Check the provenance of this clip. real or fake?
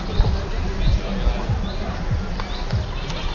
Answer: real